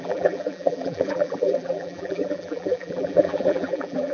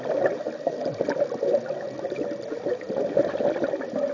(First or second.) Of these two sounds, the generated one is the first